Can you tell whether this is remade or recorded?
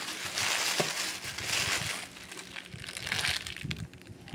recorded